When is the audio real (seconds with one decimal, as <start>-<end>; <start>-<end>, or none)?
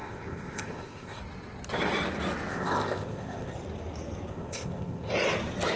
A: 1.2-2.5; 3.5-4.3; 5.1-5.8